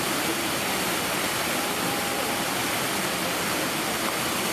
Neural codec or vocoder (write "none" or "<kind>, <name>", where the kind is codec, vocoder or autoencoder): none